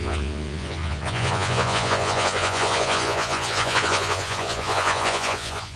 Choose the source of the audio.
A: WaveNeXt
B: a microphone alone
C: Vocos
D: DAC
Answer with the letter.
C